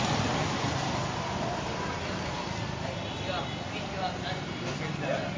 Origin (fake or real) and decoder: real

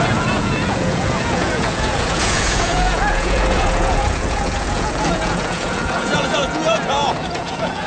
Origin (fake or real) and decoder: fake, vocoder, Vocos